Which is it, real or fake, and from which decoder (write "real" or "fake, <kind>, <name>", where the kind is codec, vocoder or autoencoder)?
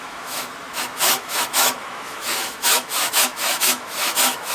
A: fake, autoencoder, DAC-VAE